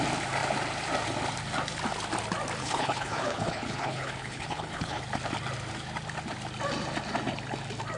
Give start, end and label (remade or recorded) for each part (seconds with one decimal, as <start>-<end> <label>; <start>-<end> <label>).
0.0-2.6 recorded; 2.6-5.0 remade; 5.0-8.0 recorded